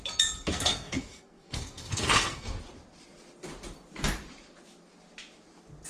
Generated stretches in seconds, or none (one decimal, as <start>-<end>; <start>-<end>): 0.5-2.6